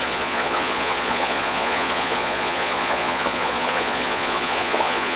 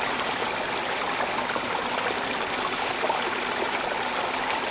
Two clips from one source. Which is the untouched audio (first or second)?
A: second